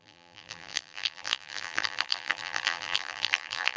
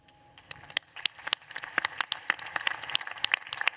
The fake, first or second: first